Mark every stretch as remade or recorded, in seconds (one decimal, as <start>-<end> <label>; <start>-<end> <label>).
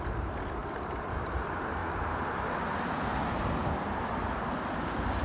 0.0-0.6 remade; 0.6-1.1 recorded; 1.1-1.8 remade; 1.8-5.2 recorded